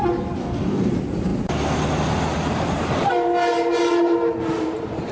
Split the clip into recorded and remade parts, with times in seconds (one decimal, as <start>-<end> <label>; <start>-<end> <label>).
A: 0.0-0.4 recorded; 0.4-0.9 remade; 0.9-5.1 recorded